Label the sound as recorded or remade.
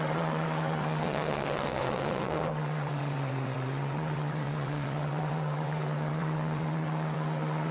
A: remade